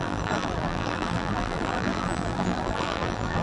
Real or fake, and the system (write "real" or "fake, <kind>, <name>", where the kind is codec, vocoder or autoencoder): fake, vocoder, BigVGAN v2